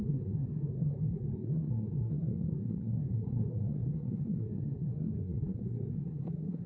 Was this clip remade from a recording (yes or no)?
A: yes